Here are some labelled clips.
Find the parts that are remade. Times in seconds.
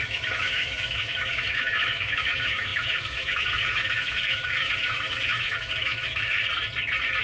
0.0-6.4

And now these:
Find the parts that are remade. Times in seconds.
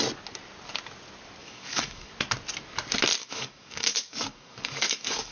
1.4-2.1; 3.2-5.3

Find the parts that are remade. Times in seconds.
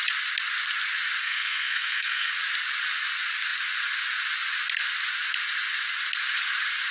1.2-2.3